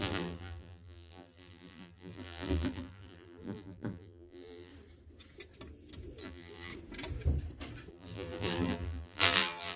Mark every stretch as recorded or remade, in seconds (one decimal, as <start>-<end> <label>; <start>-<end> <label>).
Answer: 0.0-4.7 remade; 4.7-6.2 recorded; 6.2-6.7 remade; 6.7-7.9 recorded; 7.9-9.8 remade